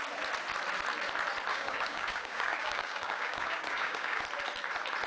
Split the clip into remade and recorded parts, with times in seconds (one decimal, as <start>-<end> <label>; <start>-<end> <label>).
0.0-1.5 recorded; 1.5-4.2 remade; 4.2-5.1 recorded